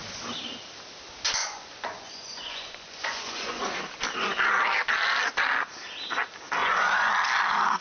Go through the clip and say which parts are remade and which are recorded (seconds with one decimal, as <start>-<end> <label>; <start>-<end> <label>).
0.0-1.4 recorded; 1.4-3.6 remade; 3.6-6.6 recorded; 6.6-7.1 remade; 7.1-7.8 recorded